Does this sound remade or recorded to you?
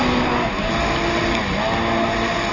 recorded